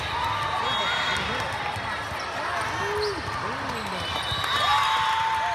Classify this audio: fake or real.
real